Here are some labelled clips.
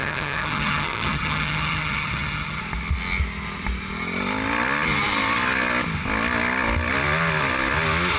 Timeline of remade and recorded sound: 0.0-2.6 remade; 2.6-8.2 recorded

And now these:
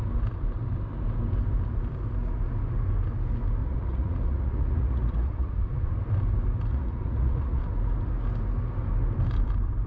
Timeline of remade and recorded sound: 0.0-3.6 recorded; 3.6-5.9 remade; 5.9-6.7 recorded; 6.7-7.6 remade; 7.6-9.9 recorded

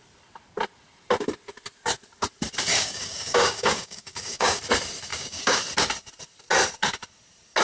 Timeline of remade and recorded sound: 0.0-2.7 recorded; 2.7-4.6 remade; 4.6-5.1 recorded; 5.1-5.6 remade; 5.6-7.6 recorded

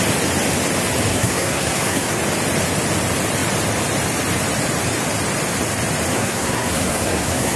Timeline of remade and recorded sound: 0.0-1.1 recorded; 1.1-2.2 remade; 2.2-6.1 recorded; 6.1-7.6 remade